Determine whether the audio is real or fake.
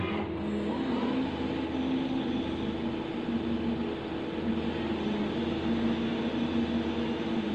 real